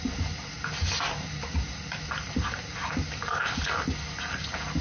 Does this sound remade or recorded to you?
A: recorded